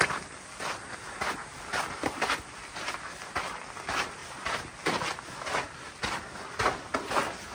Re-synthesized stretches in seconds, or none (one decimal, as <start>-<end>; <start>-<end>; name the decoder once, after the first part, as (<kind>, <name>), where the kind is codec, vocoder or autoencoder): none